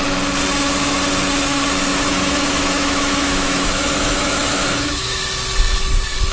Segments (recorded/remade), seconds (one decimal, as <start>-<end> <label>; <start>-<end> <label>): 0.0-1.9 recorded; 1.9-5.2 remade; 5.2-6.3 recorded